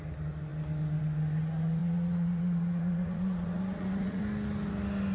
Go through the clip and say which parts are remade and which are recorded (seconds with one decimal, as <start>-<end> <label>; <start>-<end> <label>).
0.0-1.8 recorded; 1.8-4.2 remade; 4.2-5.1 recorded